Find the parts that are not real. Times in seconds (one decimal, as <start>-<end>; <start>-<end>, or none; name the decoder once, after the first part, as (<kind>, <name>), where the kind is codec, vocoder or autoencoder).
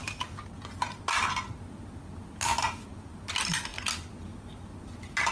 none